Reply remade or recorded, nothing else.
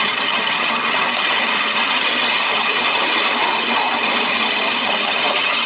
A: remade